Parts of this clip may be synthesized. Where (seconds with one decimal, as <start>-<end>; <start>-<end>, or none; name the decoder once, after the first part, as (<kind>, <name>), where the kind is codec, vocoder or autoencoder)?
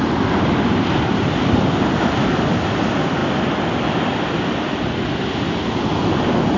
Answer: none